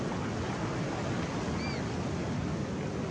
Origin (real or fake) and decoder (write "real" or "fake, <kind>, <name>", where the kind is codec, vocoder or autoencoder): real